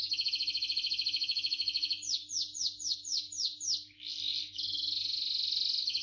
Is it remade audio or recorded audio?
recorded